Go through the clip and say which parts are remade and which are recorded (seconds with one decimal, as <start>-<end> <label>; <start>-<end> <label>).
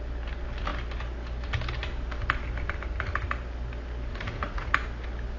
0.0-4.1 recorded; 4.1-4.7 remade; 4.7-5.4 recorded